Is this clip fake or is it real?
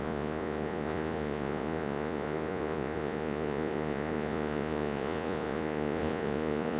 fake